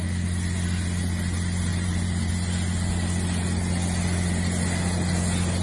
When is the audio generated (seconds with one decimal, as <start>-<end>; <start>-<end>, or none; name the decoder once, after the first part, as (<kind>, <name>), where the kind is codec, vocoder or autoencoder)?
1.7-2.3 (vocoder, BigVGAN v2)